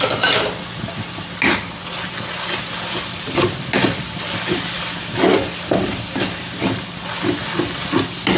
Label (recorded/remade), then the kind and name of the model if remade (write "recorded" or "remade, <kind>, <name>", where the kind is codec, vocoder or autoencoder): recorded